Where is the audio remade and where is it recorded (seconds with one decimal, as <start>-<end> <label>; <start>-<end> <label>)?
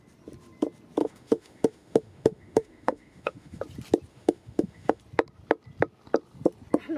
0.0-1.0 recorded; 1.0-3.6 remade; 3.6-4.1 recorded; 4.1-5.0 remade; 5.0-7.0 recorded